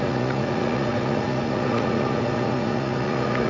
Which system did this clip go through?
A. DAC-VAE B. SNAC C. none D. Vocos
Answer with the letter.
D